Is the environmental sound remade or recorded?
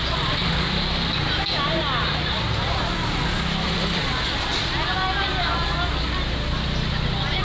recorded